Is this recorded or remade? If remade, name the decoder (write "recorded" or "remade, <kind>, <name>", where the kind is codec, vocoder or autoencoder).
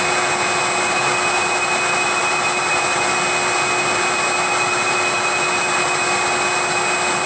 recorded